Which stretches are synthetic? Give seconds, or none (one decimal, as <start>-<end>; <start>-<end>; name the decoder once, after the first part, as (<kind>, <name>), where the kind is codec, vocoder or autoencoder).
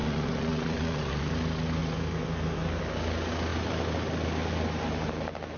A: 0.0-1.3 (vocoder, Vocos)